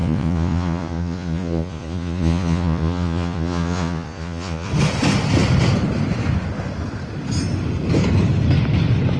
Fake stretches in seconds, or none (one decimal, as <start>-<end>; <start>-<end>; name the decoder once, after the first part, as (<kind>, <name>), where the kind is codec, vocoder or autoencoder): 0.0-4.7 (vocoder, Vocos)